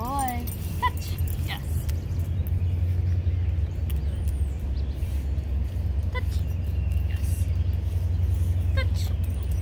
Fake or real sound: real